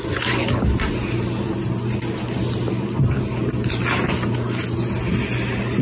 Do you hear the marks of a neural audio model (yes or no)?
no